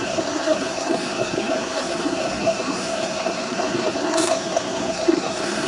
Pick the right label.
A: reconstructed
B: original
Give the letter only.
A